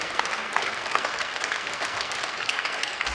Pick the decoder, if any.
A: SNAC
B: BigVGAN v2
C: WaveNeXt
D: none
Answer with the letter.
A